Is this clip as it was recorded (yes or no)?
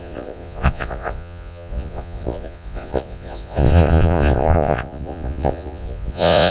no